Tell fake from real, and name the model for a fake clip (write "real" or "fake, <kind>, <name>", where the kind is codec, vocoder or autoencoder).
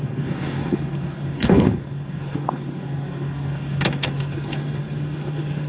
fake, codec, SNAC